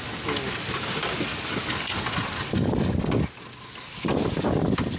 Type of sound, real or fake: real